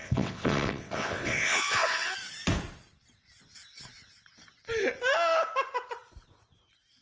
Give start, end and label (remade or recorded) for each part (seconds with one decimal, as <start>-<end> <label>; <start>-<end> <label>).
0.0-2.1 remade; 2.1-7.0 recorded